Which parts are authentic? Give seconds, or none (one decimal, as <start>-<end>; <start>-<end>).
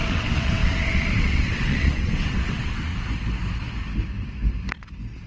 2.9-5.3